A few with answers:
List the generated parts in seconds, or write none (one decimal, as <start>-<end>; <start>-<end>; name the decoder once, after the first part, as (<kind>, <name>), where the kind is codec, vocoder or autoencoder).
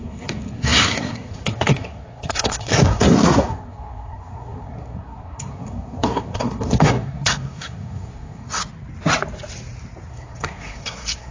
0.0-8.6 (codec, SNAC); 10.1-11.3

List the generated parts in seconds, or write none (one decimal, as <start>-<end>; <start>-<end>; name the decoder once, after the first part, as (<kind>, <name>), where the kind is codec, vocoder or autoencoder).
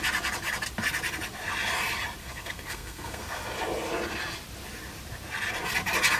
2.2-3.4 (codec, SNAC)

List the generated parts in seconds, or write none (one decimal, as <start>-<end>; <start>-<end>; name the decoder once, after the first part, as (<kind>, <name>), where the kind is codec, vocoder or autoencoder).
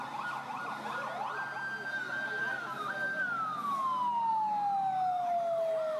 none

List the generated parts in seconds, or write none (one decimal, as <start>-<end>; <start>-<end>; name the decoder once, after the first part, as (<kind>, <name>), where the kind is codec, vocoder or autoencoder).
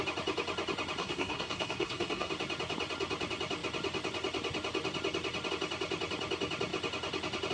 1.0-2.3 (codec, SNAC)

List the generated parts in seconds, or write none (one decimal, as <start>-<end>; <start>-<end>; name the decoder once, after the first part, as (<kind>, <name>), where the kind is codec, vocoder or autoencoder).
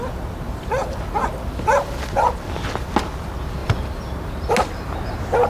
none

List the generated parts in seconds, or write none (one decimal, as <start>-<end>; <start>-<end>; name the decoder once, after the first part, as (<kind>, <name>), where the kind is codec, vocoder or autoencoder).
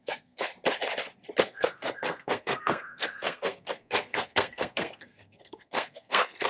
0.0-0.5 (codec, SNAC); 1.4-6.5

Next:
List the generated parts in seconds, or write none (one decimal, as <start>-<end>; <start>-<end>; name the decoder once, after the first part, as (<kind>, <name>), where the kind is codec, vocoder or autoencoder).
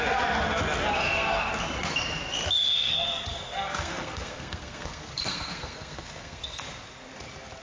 0.9-1.5 (codec, SNAC); 2.6-6.6